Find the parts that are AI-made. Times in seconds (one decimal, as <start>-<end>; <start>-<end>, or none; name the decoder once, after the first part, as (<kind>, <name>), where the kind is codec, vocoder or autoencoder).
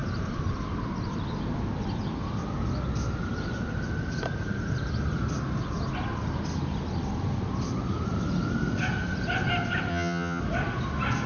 9.9-10.4 (vocoder, HiFi-GAN)